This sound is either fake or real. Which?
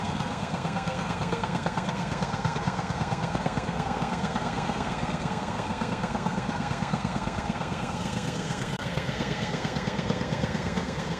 fake